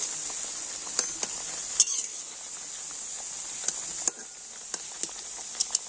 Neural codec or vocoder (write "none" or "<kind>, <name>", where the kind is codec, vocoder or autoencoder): none